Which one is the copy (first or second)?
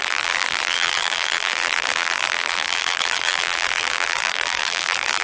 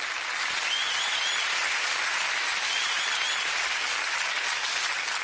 first